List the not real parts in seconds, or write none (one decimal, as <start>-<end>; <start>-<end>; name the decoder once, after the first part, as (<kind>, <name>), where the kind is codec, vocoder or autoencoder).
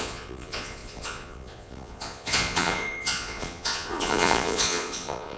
0.0-5.4 (vocoder, Vocos)